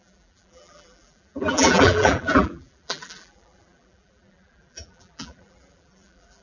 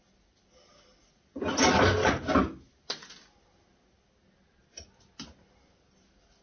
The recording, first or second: second